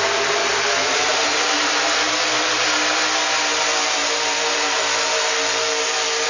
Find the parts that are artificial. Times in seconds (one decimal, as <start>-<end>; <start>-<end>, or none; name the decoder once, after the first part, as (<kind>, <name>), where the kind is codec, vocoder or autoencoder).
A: 0.4-1.7 (vocoder, BigVGAN v2)